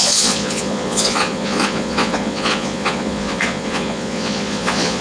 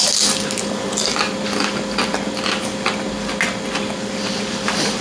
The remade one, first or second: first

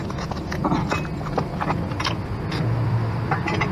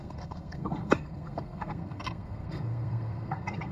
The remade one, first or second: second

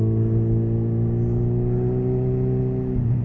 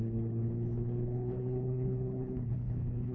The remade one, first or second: second